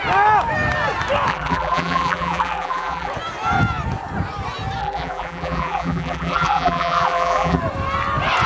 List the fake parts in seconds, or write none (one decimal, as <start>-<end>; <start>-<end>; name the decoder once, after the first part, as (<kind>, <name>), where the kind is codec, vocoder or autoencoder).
1.3-3.1 (vocoder, BigVGAN v2); 4.8-7.6